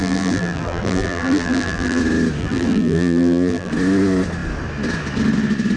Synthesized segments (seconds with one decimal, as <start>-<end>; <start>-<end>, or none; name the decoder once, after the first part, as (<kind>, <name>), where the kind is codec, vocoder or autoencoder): 0.0-2.0 (vocoder, BigVGAN v2); 2.4-3.7